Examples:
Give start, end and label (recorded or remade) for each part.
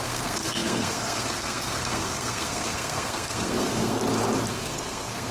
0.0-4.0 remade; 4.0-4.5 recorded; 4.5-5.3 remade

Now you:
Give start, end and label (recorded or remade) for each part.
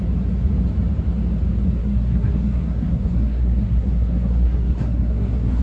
0.0-1.8 recorded; 1.8-5.6 remade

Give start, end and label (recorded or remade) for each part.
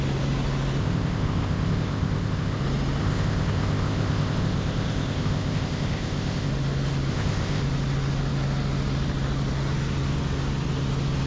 0.0-0.8 recorded; 0.8-2.6 remade; 2.6-3.0 recorded; 3.0-6.5 remade; 6.5-7.1 recorded; 7.1-7.6 remade; 7.6-11.3 recorded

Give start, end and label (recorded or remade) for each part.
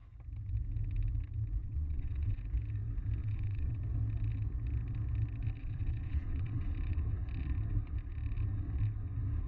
0.0-1.6 recorded; 1.6-2.4 remade; 2.4-3.2 recorded; 3.2-3.8 remade; 3.8-5.6 recorded; 5.6-7.0 remade; 7.0-9.5 recorded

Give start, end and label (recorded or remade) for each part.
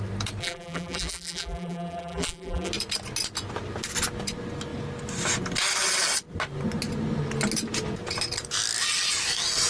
0.0-0.4 recorded; 0.4-2.7 remade; 2.7-9.7 recorded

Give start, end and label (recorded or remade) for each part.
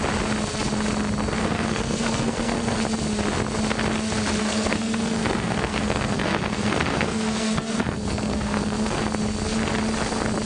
0.0-1.4 recorded; 1.4-2.8 remade; 2.8-4.4 recorded; 4.4-9.0 remade; 9.0-10.5 recorded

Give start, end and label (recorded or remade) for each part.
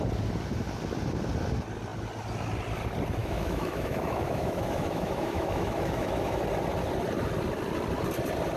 0.0-3.2 recorded; 3.2-6.4 remade; 6.4-8.6 recorded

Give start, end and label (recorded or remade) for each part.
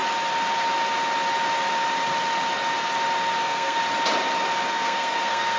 0.0-3.4 recorded; 3.4-3.8 remade; 3.8-4.7 recorded; 4.7-5.6 remade